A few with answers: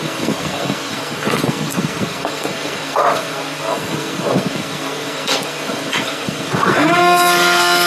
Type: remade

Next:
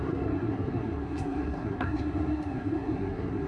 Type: remade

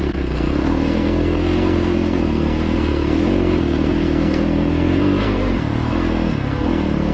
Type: remade